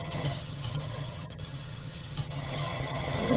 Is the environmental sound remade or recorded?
remade